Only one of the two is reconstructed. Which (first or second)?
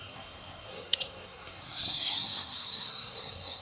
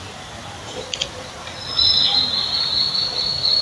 first